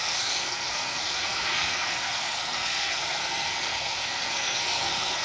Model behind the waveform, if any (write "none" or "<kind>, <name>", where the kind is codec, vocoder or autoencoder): codec, SNAC